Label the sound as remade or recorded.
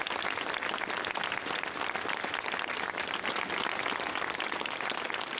recorded